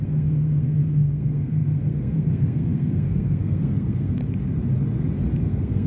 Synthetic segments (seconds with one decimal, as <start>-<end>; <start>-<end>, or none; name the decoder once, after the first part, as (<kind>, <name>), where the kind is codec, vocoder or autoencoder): 0.0-4.2 (codec, SNAC); 5.4-5.9